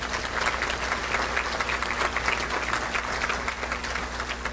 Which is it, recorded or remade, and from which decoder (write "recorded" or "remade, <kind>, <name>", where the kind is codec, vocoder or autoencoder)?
recorded